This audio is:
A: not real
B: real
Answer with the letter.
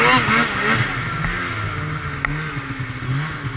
B